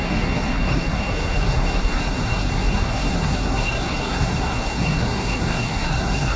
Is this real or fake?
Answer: fake